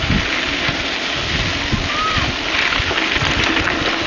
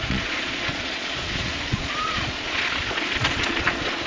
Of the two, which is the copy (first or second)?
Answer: second